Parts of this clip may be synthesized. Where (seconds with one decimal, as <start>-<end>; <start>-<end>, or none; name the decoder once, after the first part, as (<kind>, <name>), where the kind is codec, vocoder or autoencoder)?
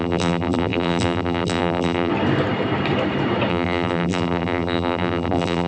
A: 0.0-2.1 (vocoder, BigVGAN v2); 3.5-5.7